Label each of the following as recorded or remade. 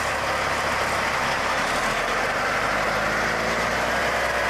recorded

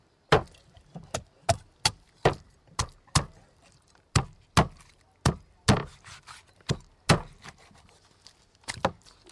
recorded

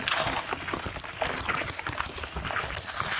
recorded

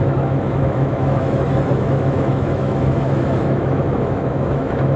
remade